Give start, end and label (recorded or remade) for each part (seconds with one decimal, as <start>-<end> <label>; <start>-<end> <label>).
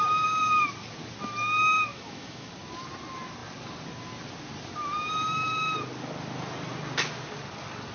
0.0-1.9 recorded; 1.9-2.5 remade; 2.5-7.9 recorded